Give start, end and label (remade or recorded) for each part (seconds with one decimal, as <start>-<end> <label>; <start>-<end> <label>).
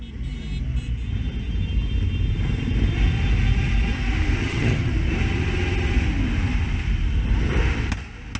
0.0-4.4 recorded; 4.4-4.9 remade; 4.9-8.4 recorded